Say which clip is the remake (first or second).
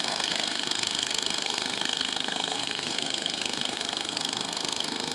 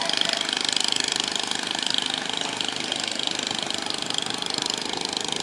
first